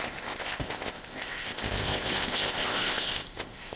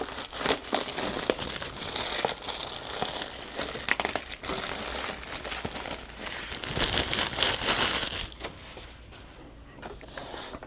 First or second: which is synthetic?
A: first